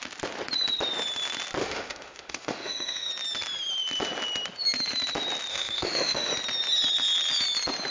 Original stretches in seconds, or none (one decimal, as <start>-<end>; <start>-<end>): 0.0-1.6; 3.1-5.5; 6.3-7.9